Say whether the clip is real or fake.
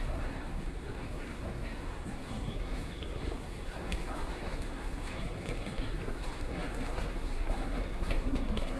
fake